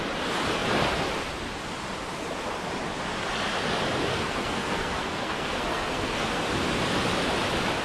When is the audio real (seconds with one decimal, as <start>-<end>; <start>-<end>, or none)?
0.0-4.1; 6.4-7.8